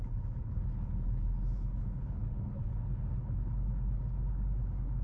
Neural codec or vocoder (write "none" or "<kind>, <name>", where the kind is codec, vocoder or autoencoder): codec, HILCodec